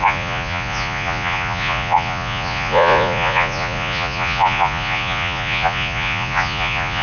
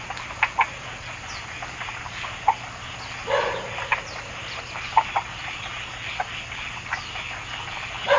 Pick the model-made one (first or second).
first